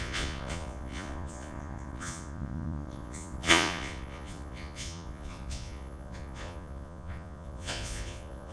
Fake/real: fake